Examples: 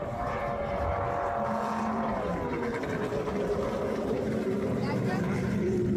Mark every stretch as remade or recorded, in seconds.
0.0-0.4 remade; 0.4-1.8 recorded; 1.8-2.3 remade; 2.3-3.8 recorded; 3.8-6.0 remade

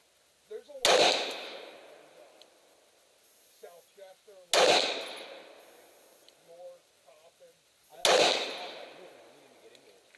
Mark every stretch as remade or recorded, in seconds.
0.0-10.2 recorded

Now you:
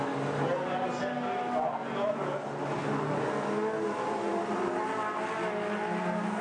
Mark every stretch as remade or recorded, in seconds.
0.0-6.4 recorded

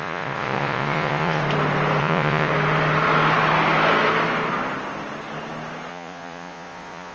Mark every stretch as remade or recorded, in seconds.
0.0-1.4 remade; 1.4-2.0 recorded; 2.0-2.5 remade; 2.5-5.9 recorded; 5.9-7.1 remade